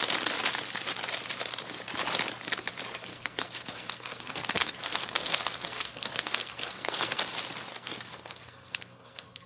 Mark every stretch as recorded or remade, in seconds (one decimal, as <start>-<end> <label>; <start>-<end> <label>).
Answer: 0.0-3.1 recorded; 3.1-7.2 remade; 7.2-7.7 recorded; 7.7-9.5 remade